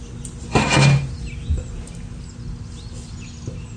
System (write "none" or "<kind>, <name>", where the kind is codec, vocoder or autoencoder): none